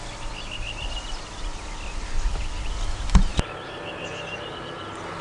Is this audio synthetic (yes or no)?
no